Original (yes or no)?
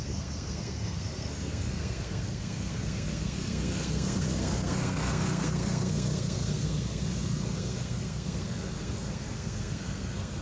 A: no